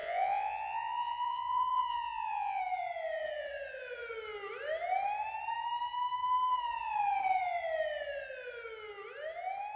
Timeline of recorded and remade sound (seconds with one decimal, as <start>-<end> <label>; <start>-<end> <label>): 0.0-2.6 remade; 2.6-9.8 recorded